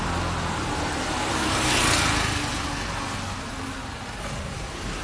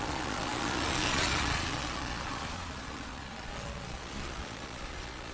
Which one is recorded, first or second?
first